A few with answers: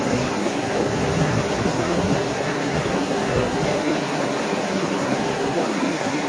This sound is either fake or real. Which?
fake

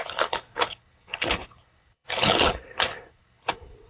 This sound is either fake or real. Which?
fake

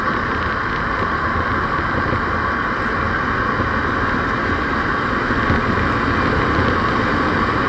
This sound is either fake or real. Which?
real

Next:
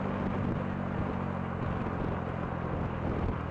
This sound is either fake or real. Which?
real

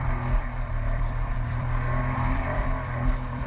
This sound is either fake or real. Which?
fake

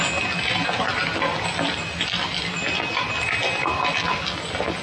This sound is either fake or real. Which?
real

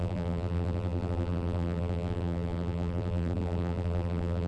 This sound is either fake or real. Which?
fake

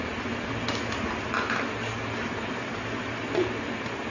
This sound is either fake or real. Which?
real